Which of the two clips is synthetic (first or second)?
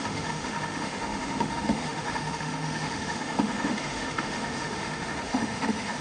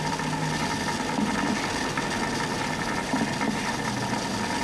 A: first